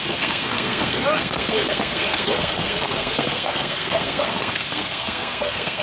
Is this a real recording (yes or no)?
no